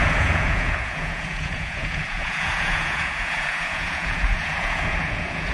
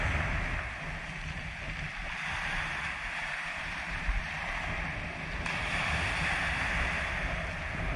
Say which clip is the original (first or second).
second